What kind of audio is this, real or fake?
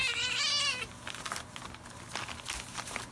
real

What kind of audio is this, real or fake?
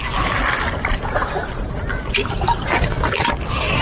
real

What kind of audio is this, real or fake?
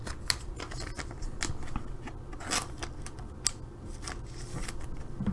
real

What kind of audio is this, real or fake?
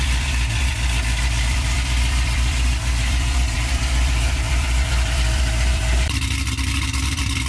fake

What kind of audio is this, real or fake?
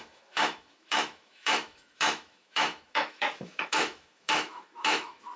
fake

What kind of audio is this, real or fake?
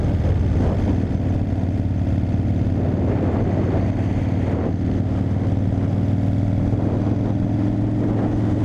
real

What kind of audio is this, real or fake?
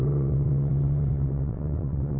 fake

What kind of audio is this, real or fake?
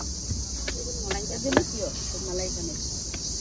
real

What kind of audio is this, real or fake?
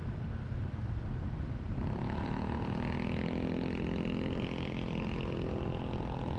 real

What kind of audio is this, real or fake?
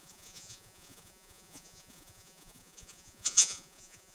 fake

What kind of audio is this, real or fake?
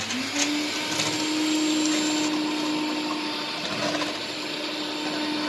real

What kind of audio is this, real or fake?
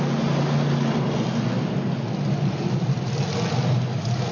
real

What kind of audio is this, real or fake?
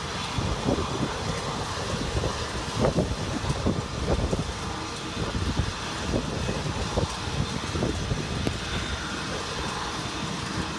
real